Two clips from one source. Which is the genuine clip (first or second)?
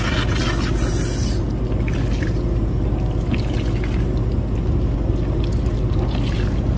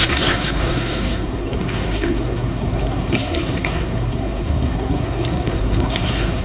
first